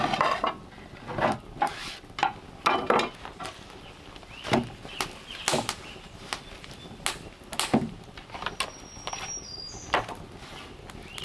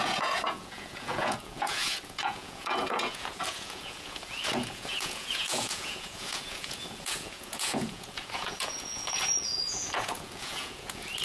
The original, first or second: first